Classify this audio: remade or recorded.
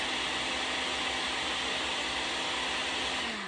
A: recorded